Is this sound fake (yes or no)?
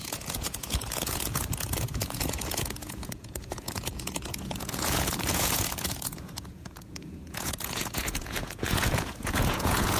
yes